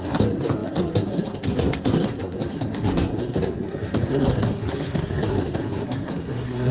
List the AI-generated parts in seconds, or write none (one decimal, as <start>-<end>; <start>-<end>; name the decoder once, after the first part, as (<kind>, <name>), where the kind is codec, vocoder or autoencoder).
0.0-6.7 (codec, SNAC)